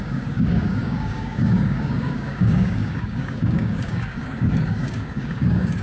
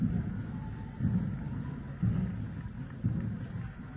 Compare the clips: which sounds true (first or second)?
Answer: second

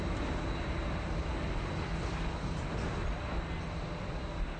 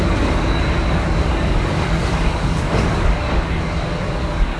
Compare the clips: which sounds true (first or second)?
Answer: first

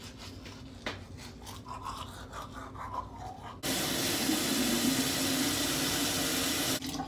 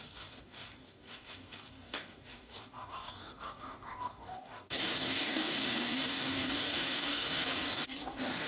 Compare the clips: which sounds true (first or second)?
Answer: first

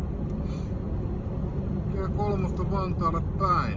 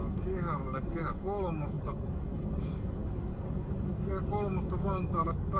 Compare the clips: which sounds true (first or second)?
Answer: first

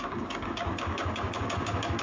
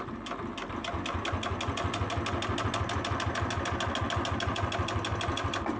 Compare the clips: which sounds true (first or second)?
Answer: second